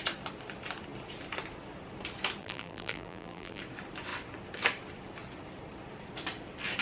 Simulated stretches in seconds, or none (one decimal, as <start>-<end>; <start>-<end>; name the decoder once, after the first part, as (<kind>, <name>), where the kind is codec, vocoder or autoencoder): 2.4-3.6 (vocoder, BigVGAN v2)